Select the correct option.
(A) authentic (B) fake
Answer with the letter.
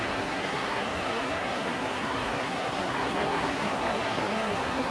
B